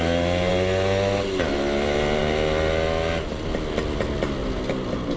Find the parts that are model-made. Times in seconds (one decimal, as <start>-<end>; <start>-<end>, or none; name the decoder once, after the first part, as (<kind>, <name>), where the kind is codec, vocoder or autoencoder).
none